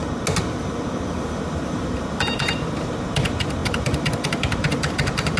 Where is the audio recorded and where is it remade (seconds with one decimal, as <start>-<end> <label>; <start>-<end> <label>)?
0.0-0.6 recorded; 0.6-5.4 remade

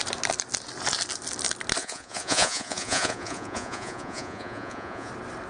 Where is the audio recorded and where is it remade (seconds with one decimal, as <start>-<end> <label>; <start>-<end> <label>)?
0.0-1.8 recorded; 1.8-5.1 remade; 5.1-5.5 recorded